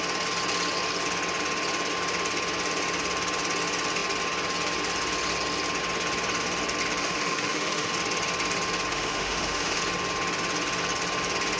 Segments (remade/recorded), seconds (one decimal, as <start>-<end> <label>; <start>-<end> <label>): 0.0-7.0 recorded; 7.0-7.9 remade; 7.9-8.9 recorded; 8.9-9.8 remade; 9.8-11.6 recorded